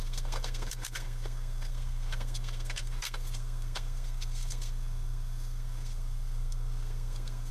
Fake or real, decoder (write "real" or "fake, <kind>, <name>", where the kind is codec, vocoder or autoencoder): fake, codec, SNAC